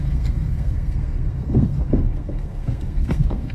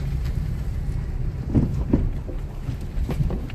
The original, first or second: second